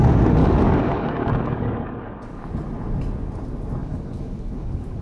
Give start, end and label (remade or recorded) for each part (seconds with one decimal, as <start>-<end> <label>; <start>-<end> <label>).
0.0-0.4 recorded; 0.4-2.5 remade; 2.5-3.8 recorded; 3.8-5.0 remade

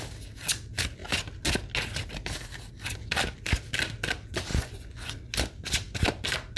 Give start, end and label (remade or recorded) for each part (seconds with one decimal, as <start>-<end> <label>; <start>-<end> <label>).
0.0-4.5 recorded; 4.5-5.1 remade; 5.1-6.6 recorded

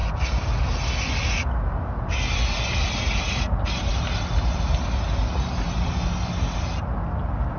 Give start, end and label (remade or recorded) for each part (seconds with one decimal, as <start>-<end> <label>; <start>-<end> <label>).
0.0-7.6 recorded